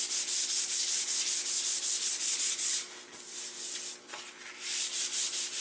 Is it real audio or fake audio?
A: real